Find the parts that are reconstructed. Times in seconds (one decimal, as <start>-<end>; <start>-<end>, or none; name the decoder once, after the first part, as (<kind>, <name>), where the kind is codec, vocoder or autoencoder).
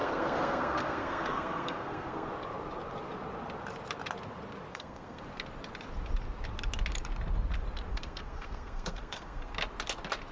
0.0-2.3 (codec, SNAC); 4.7-5.2; 7.9-9.5